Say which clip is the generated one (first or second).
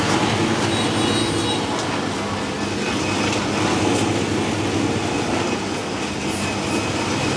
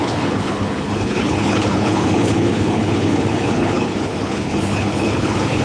second